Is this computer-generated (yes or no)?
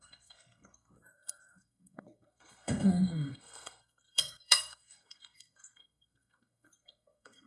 yes